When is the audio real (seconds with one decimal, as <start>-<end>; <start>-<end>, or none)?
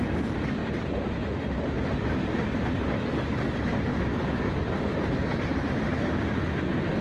0.0-0.6; 2.9-4.9; 5.6-7.0